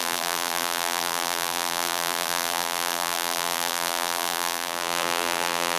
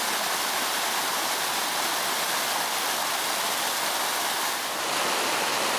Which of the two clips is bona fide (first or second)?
second